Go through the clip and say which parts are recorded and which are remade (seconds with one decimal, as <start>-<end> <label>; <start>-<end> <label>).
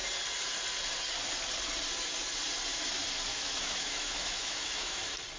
0.0-3.3 recorded; 3.3-5.0 remade; 5.0-5.4 recorded